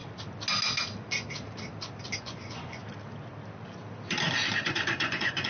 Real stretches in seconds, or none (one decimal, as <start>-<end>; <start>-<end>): 0.0-2.2; 2.8-4.6

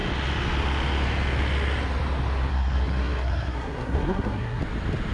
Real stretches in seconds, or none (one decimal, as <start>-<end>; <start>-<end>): 0.0-2.5; 4.6-5.1

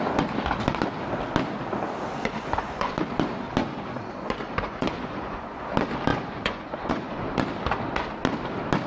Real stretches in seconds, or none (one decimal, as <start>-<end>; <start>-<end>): 0.0-2.1; 3.0-3.6; 5.6-6.1; 7.2-8.9

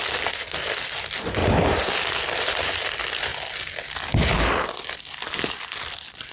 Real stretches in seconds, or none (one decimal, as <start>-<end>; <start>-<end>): 0.0-1.4; 1.9-6.3

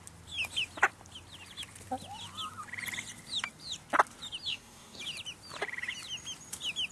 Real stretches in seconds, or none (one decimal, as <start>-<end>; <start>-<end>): 0.0-4.5; 5.0-6.9

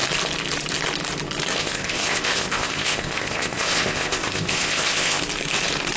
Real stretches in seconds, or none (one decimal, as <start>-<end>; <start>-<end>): 0.0-1.6; 5.2-6.0

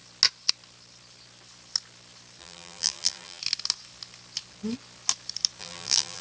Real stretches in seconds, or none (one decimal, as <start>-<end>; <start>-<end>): 0.0-2.4; 3.4-5.6

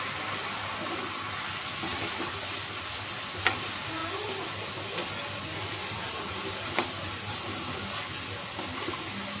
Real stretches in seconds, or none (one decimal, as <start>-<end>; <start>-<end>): 0.0-9.4